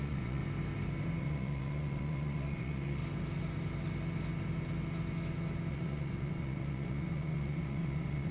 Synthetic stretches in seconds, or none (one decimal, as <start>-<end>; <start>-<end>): 0.0-0.4; 1.2-3.0; 5.7-8.3